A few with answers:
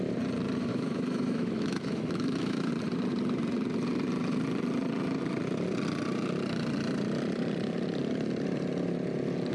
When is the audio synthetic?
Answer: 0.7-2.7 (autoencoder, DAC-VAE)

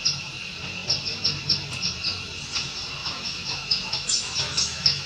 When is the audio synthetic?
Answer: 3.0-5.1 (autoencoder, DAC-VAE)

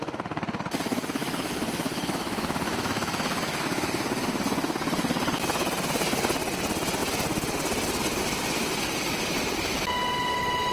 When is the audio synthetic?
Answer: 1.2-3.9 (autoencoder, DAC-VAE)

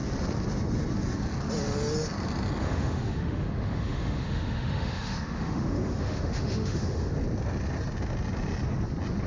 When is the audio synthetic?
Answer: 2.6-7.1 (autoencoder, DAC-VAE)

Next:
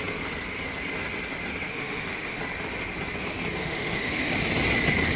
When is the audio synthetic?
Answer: 1.7-2.4 (autoencoder, DAC-VAE); 3.6-4.3

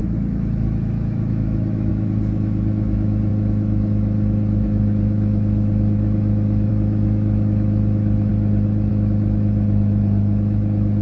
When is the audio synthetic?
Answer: 0.0-8.3 (autoencoder, DAC-VAE); 8.9-11.0

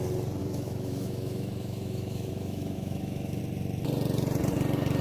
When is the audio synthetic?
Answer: 0.4-3.4 (autoencoder, DAC-VAE)